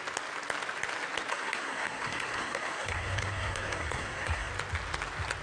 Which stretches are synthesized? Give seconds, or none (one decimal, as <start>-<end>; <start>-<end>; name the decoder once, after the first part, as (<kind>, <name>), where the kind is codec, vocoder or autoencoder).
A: 1.3-4.5 (codec, SNAC)